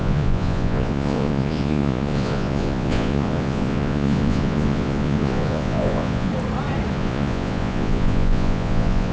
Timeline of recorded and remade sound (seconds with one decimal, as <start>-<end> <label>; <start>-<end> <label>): 0.0-6.3 remade; 6.3-6.9 recorded; 6.9-9.1 remade